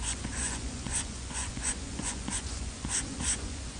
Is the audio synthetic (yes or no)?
yes